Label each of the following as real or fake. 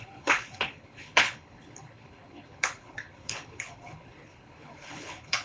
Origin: fake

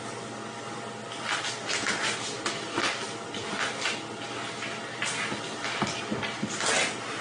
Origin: real